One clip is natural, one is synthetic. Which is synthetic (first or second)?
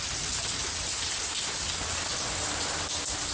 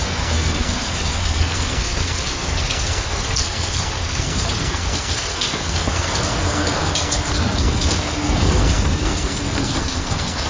second